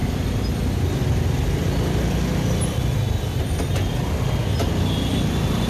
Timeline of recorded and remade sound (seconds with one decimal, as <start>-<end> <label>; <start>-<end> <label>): 0.0-5.7 recorded